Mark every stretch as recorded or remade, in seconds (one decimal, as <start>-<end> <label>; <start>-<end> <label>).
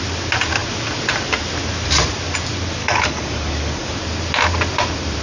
0.0-2.8 recorded; 2.8-3.9 remade; 3.9-5.2 recorded